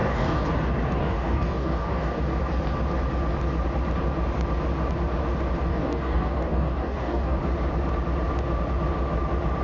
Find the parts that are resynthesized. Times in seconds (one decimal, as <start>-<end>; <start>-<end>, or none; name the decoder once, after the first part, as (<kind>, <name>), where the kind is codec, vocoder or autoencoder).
0.0-0.5 (codec, DAC); 1.0-2.2; 5.7-7.4